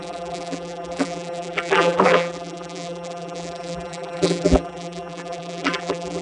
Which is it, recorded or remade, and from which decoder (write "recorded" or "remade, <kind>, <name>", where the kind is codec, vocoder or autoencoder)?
remade, vocoder, BigVGAN v2